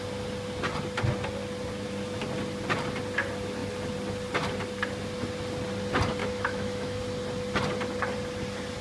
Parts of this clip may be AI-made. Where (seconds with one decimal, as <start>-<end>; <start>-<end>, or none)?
6.2-7.0